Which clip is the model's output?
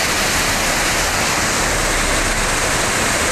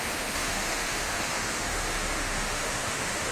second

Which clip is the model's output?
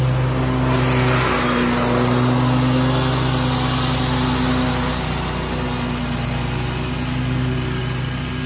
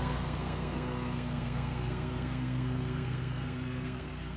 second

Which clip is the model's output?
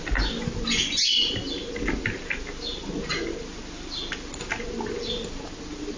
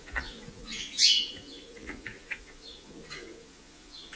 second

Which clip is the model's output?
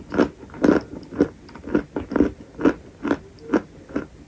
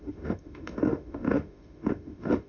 second